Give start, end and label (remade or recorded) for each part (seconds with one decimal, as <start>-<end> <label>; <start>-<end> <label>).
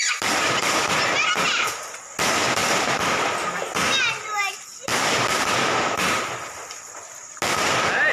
0.0-2.6 recorded; 2.6-3.3 remade; 3.3-8.1 recorded